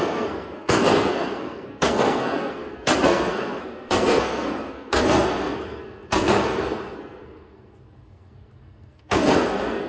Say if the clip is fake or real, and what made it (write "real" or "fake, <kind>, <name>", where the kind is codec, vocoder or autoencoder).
fake, codec, SNAC